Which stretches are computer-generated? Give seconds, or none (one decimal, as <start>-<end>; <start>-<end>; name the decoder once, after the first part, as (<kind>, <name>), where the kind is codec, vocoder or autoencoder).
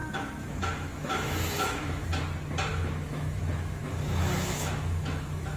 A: 0.0-2.1 (autoencoder, DAC-VAE); 2.7-5.6